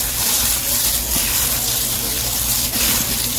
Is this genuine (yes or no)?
yes